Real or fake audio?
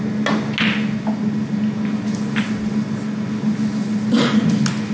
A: real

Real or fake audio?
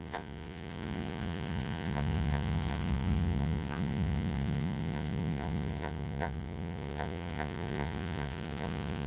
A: fake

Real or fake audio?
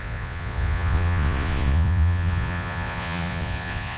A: fake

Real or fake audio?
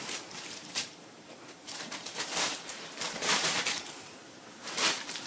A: fake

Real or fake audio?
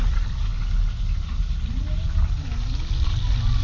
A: real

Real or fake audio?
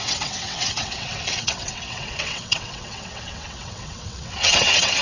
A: fake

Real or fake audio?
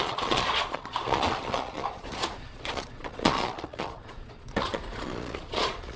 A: fake